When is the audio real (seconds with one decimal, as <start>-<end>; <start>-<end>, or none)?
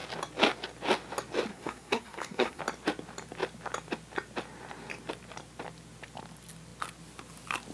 0.0-1.5; 2.6-7.7